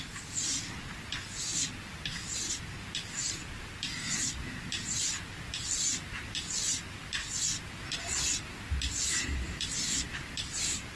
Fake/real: real